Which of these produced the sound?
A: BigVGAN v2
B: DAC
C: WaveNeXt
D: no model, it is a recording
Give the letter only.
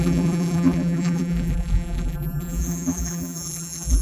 A